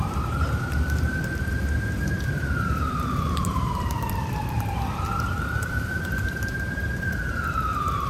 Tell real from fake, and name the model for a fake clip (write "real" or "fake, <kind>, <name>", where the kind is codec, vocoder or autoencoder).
fake, vocoder, BigVGAN v2